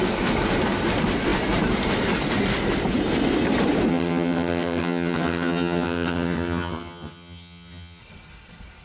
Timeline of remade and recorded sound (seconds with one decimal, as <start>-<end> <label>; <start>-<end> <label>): 0.0-3.9 recorded; 3.9-8.0 remade; 8.0-8.8 recorded

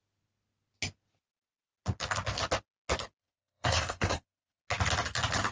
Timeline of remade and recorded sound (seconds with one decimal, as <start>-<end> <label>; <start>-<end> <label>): 0.0-3.2 recorded; 3.2-4.6 remade; 4.6-5.5 recorded